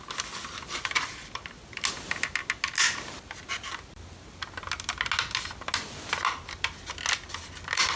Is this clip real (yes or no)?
yes